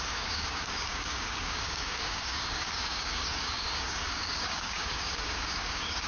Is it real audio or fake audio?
fake